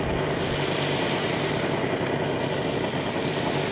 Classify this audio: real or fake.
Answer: real